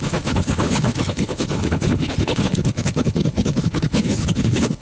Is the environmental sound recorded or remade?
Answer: remade